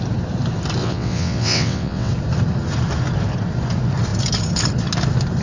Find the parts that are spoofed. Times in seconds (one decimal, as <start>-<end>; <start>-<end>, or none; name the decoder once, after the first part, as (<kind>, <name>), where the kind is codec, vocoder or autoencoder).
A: 0.8-2.1 (vocoder, WaveNeXt)